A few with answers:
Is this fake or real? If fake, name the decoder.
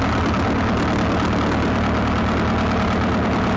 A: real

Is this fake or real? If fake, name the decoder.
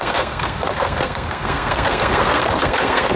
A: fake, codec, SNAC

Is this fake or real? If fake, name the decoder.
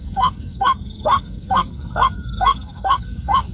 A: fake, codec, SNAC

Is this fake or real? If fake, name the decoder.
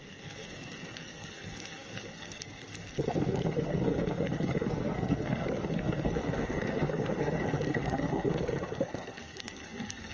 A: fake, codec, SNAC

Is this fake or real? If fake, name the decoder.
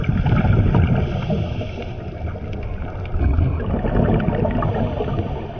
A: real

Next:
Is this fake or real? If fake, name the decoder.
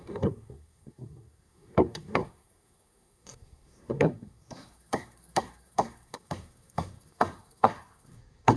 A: fake, codec, SNAC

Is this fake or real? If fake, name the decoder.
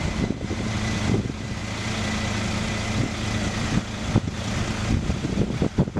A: real